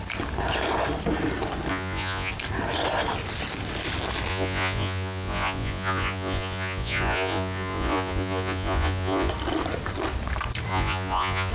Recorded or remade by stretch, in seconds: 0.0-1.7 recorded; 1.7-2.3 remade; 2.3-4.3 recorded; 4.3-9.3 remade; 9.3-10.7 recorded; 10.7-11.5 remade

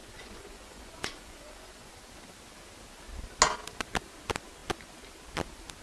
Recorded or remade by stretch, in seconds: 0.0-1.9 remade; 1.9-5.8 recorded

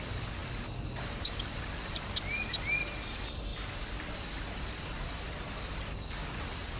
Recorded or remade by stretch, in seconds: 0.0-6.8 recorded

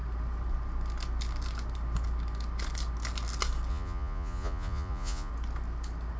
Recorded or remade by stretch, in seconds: 0.0-3.7 recorded; 3.7-5.3 remade; 5.3-6.2 recorded

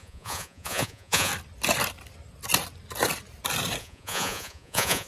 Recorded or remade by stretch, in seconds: 0.0-1.3 remade; 1.3-3.8 recorded; 3.8-5.1 remade

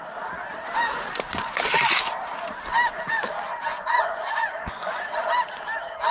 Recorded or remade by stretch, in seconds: 0.0-3.7 recorded; 3.7-5.2 remade; 5.2-6.1 recorded